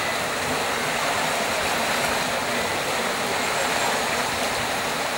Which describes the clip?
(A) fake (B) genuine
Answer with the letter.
B